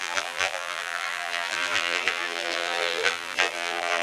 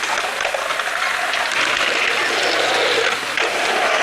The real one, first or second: second